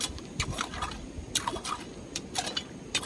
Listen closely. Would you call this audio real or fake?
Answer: real